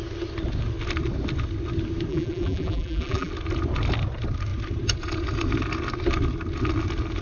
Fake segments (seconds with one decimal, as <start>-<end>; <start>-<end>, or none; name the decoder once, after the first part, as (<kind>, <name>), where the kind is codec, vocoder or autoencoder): 2.1-3.3 (vocoder, BigVGAN v2)